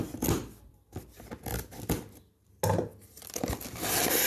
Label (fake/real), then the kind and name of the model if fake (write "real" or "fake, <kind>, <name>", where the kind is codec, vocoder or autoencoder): real